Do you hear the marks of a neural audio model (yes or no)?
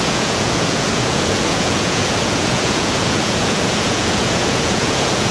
yes